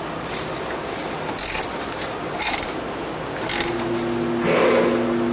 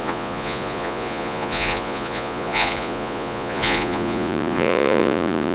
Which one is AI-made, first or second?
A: second